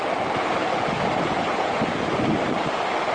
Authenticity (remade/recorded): recorded